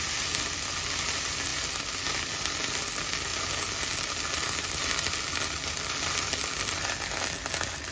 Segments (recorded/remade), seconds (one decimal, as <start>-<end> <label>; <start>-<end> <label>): 0.0-7.9 recorded